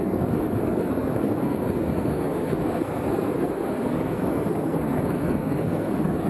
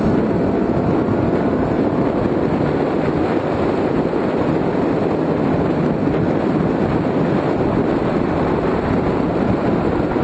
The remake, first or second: first